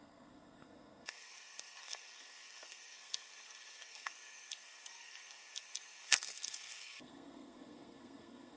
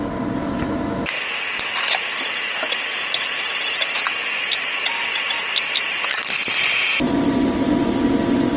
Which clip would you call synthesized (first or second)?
first